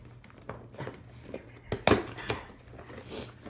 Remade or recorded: recorded